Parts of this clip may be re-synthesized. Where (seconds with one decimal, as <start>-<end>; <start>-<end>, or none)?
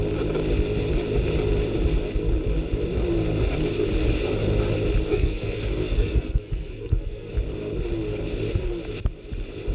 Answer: 5.1-7.3